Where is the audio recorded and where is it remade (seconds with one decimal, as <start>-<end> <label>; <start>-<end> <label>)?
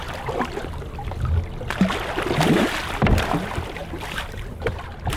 0.0-5.2 recorded